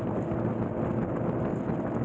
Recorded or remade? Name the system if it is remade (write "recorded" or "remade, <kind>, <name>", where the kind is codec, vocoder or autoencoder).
recorded